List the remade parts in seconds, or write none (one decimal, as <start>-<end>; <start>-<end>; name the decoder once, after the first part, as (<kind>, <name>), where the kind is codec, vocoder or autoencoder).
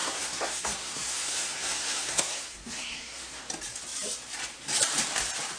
0.0-3.4 (codec, SNAC)